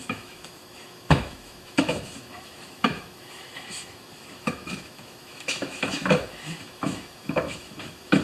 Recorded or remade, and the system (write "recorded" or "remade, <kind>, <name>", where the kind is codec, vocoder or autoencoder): remade, autoencoder, DAC-VAE